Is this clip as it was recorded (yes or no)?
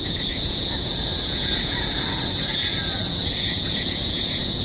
no